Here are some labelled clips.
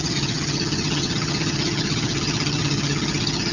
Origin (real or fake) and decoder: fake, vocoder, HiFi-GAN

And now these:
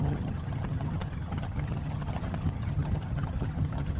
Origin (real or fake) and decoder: fake, vocoder, HiFi-GAN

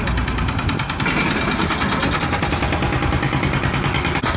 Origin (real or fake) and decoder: real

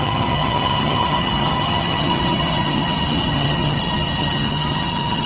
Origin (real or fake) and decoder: fake, vocoder, HiFi-GAN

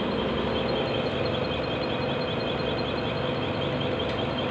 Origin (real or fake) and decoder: real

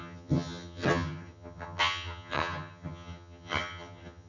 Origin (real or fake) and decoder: fake, vocoder, HiFi-GAN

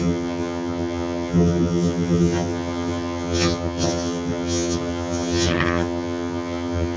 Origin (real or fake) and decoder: fake, vocoder, HiFi-GAN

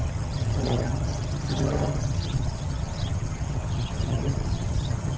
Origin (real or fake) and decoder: fake, vocoder, HiFi-GAN